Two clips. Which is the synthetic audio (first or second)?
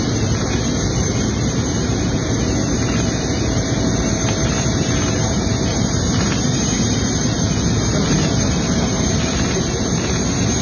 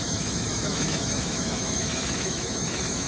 second